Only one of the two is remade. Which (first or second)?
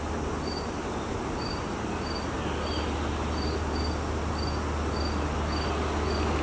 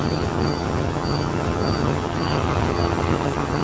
second